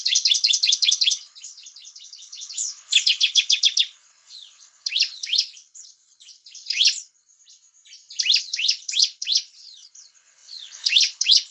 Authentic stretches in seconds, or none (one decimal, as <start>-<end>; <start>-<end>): 7.3-8.4